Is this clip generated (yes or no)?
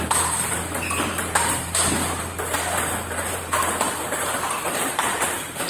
yes